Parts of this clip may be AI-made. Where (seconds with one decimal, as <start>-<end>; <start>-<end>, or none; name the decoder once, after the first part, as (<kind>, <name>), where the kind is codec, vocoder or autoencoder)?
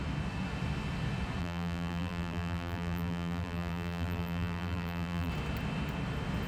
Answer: 1.4-5.3 (vocoder, BigVGAN v2)